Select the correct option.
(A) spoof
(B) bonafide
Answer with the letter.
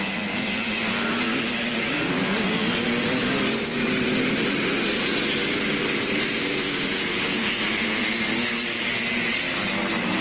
B